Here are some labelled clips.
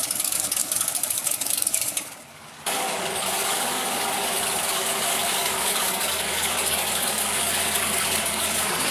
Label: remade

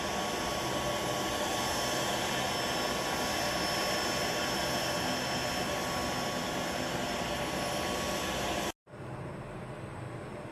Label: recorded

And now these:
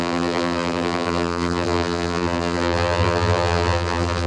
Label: remade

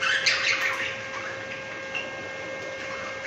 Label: recorded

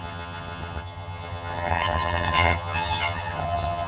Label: remade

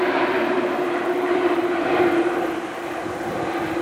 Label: remade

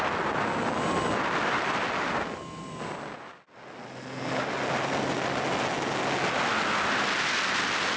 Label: recorded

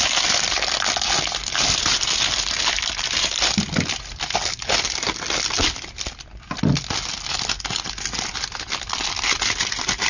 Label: recorded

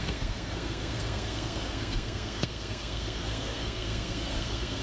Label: remade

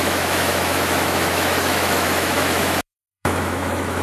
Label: remade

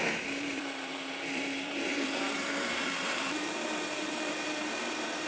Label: remade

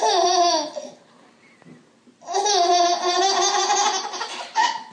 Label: recorded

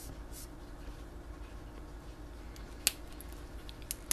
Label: recorded